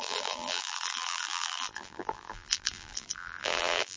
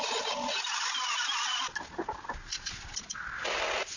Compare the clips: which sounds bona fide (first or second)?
second